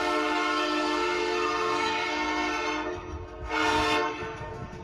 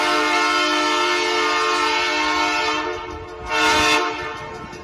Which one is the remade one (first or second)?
first